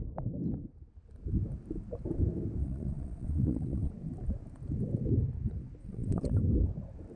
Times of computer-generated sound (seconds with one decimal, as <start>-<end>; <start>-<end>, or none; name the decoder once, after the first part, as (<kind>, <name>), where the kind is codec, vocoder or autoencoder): 2.6-3.9 (vocoder, WaveNeXt); 5.8-6.4